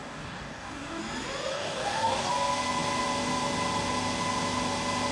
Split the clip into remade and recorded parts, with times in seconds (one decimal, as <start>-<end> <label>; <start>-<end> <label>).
0.0-1.0 remade; 1.0-1.5 recorded; 1.5-2.3 remade; 2.3-5.1 recorded